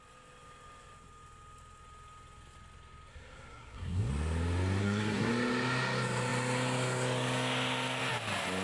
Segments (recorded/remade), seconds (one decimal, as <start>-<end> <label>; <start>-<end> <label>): 0.0-3.1 recorded; 3.1-4.1 remade; 4.1-4.8 recorded; 4.8-5.3 remade; 5.3-8.6 recorded